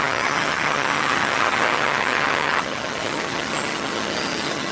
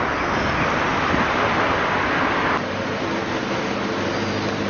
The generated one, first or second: first